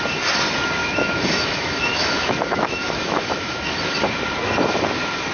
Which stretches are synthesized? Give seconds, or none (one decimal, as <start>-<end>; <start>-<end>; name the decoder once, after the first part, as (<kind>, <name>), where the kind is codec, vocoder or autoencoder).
0.8-4.0 (autoencoder, DAC-VAE)